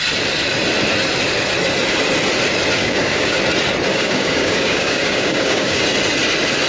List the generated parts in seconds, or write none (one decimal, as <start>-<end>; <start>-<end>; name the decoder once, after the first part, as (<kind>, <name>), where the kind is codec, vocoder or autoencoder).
2.8-3.4 (codec, DAC); 3.9-5.8